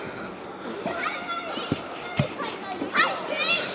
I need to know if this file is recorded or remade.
recorded